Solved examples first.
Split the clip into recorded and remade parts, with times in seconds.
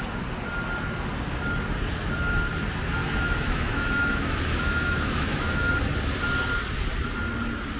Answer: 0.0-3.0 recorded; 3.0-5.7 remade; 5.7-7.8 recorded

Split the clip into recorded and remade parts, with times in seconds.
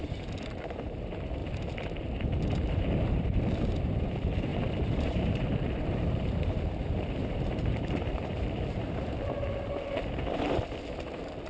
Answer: 0.0-1.4 recorded; 1.4-3.4 remade; 3.4-4.5 recorded; 4.5-8.9 remade; 8.9-11.5 recorded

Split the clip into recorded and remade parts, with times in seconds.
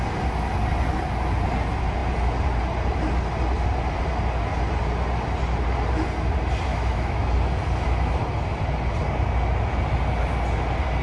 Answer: 0.0-6.7 recorded; 6.7-7.3 remade; 7.3-11.0 recorded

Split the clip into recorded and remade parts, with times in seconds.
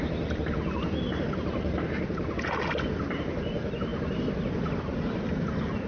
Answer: 0.0-5.9 recorded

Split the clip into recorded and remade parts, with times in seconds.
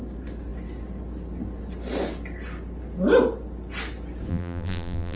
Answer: 0.0-4.3 recorded; 4.3-5.2 remade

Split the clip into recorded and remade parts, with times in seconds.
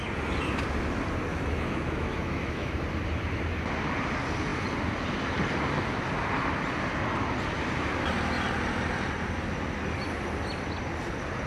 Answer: 0.0-1.3 recorded; 1.3-2.7 remade; 2.7-11.5 recorded